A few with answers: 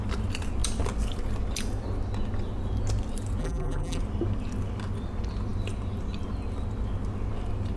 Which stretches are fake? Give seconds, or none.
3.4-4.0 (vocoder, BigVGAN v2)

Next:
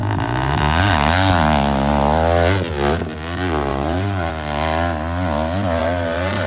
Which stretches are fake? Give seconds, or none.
0.0-0.6 (vocoder, BigVGAN v2); 3.7-4.3; 5.8-6.5

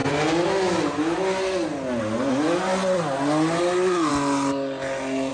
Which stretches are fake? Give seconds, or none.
none

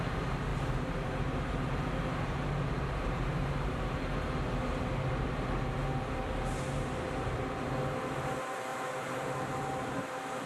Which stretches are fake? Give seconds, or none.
0.5-4.0 (vocoder, BigVGAN v2); 8.7-9.6